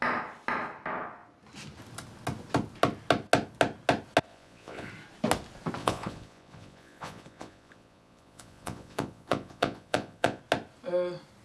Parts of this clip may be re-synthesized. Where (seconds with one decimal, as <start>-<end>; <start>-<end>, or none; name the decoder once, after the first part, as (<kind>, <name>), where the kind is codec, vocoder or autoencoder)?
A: 4.3-4.9 (vocoder, Vocos); 5.8-10.4